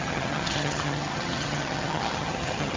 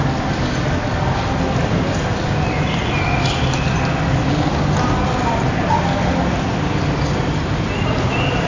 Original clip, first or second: second